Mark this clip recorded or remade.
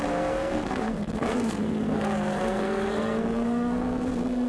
remade